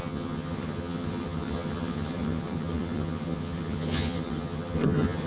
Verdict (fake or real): fake